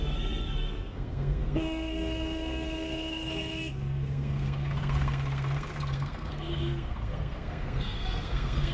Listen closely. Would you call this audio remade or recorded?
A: remade